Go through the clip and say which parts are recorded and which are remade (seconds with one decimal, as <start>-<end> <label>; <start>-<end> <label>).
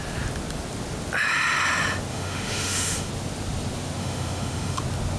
0.0-2.1 recorded; 2.1-3.1 remade; 3.1-4.0 recorded; 4.0-4.8 remade; 4.8-5.2 recorded